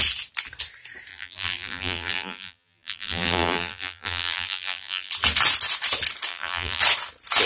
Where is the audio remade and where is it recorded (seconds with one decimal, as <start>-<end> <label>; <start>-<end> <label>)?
0.0-1.1 recorded; 1.1-5.1 remade; 5.1-6.3 recorded; 6.3-6.8 remade; 6.8-7.5 recorded